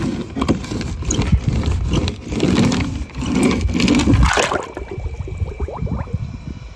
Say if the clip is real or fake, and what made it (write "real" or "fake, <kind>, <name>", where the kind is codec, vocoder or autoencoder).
real